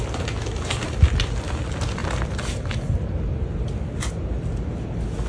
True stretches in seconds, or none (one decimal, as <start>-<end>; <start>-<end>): 0.0-5.3